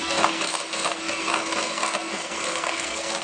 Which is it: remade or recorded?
remade